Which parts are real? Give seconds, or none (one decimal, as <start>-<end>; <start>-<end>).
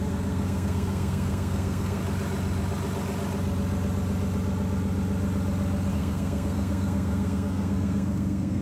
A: 2.0-5.9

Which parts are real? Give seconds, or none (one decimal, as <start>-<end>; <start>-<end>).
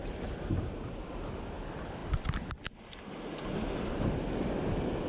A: 0.0-5.1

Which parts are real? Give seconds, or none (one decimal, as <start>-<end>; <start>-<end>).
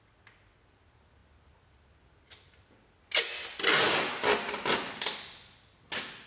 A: 0.0-6.3